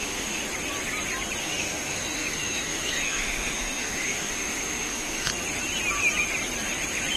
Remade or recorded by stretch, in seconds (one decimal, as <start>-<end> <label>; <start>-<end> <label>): 0.0-0.4 remade; 0.4-1.4 recorded; 1.4-5.3 remade; 5.3-7.2 recorded